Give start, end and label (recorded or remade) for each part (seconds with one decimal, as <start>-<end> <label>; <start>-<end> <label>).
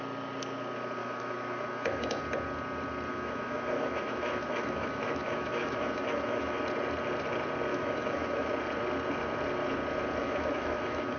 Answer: 0.0-1.0 recorded; 1.0-2.2 remade; 2.2-3.1 recorded; 3.1-6.6 remade; 6.6-7.7 recorded; 7.7-8.5 remade; 8.5-10.2 recorded; 10.2-11.2 remade